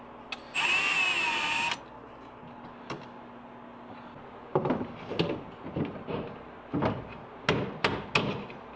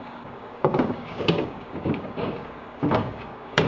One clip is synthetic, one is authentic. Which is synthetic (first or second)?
second